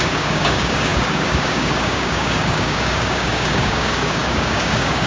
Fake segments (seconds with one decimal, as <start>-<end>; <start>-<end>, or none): 0.0-5.1